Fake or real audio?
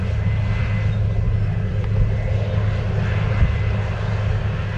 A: real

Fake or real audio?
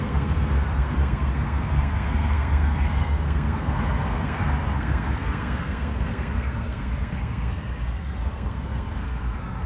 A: fake